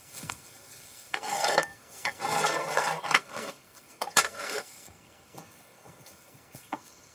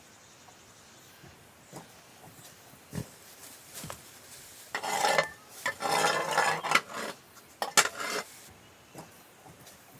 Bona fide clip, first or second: second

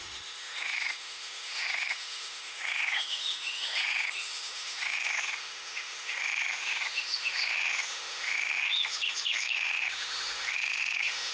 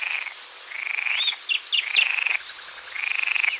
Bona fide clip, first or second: second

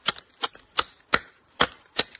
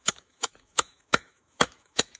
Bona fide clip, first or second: first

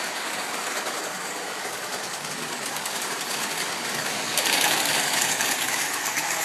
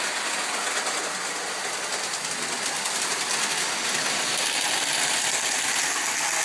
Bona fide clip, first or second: second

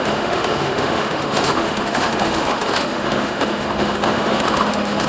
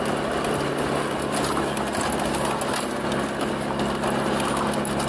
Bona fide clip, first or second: second